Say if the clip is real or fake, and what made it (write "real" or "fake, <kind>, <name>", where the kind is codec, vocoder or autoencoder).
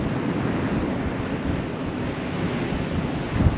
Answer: real